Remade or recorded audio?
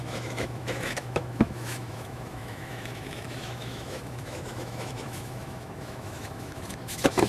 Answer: remade